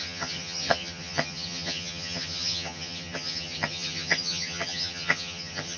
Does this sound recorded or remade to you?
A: remade